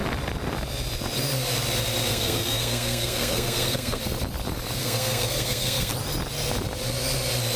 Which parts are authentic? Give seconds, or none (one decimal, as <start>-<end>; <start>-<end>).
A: 0.0-2.1; 4.0-4.8; 5.9-7.6